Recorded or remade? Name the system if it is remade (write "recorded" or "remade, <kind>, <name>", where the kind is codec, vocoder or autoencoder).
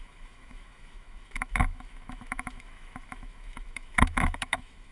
remade, autoencoder, DAC-VAE